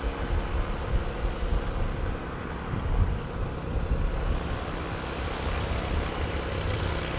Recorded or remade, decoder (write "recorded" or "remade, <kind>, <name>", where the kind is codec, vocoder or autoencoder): recorded